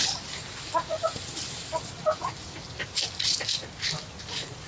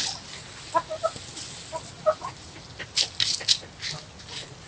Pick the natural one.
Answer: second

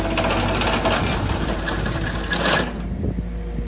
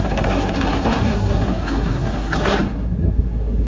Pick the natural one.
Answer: first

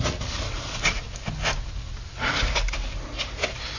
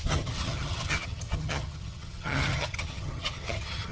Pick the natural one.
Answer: first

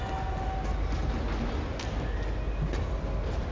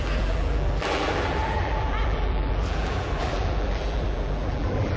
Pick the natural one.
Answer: first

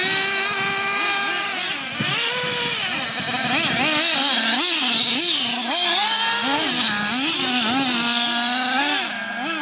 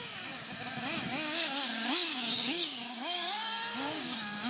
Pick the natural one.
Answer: first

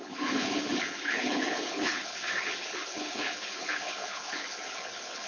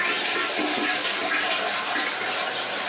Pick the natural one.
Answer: second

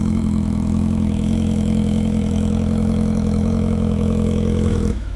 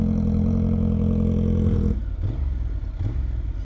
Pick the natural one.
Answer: second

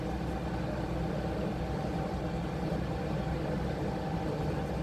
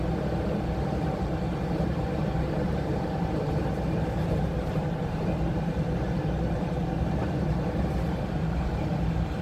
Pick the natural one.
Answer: first